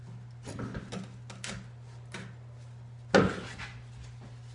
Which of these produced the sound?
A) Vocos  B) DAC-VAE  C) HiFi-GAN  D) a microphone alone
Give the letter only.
D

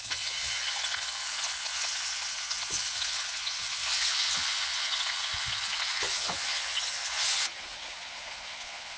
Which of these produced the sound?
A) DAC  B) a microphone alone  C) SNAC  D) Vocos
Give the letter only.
D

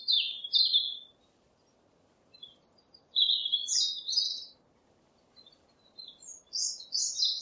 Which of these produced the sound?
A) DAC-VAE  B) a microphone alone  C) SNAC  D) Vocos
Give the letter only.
B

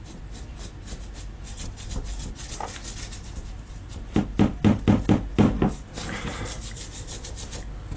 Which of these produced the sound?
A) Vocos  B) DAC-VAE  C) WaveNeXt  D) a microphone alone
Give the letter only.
D